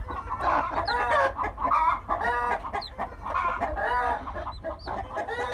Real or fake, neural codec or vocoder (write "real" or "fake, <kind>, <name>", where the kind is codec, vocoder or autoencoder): real